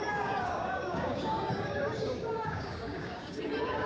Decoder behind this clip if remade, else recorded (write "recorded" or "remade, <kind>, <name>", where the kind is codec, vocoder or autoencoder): remade, codec, DAC